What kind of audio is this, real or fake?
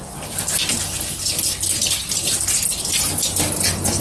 real